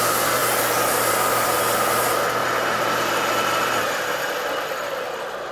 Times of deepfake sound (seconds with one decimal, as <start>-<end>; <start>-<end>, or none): 0.4-1.1; 2.4-4.3